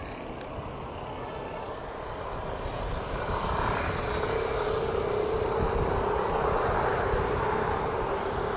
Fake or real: real